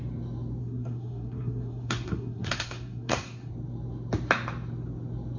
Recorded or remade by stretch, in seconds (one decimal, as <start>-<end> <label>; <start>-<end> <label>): 0.0-0.6 recorded; 0.6-3.5 remade; 3.5-5.4 recorded

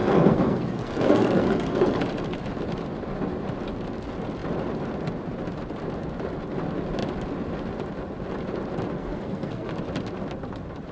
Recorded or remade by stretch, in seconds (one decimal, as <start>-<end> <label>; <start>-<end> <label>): 0.0-2.0 remade; 2.0-9.0 recorded; 9.0-9.7 remade; 9.7-10.9 recorded

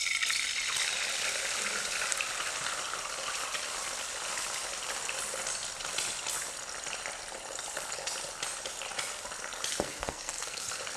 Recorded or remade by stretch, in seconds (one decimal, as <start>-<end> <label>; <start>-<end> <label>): 0.0-9.7 recorded; 9.7-10.6 remade; 10.6-11.0 recorded

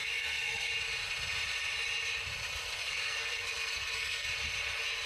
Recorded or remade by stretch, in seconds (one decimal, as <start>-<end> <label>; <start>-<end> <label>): 0.0-0.7 remade; 0.7-2.8 recorded; 2.8-4.3 remade; 4.3-5.1 recorded

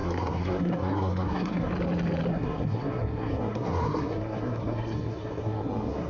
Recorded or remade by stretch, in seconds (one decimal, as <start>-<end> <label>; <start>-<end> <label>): 0.0-1.7 remade; 1.7-2.3 recorded; 2.3-6.1 remade